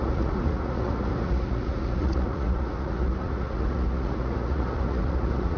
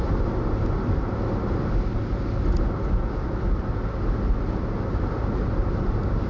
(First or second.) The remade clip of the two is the first